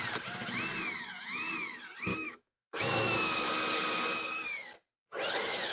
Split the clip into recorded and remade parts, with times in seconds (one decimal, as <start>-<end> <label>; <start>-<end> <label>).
0.0-2.1 recorded; 2.1-3.5 remade; 3.5-5.7 recorded